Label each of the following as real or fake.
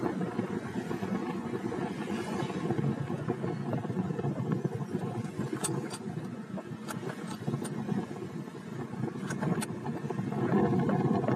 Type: fake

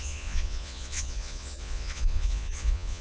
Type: fake